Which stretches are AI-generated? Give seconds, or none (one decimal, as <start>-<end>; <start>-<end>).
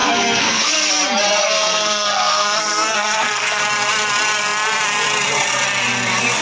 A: 0.0-0.9; 1.4-3.6